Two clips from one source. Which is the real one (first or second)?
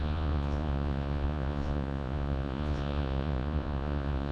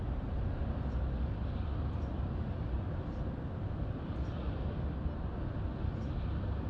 second